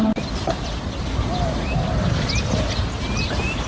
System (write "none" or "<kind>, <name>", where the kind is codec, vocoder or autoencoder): none